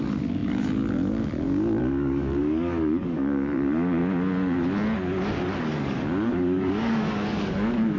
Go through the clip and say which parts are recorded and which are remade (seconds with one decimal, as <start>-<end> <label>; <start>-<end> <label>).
0.0-4.0 remade; 4.0-5.6 recorded; 5.6-8.0 remade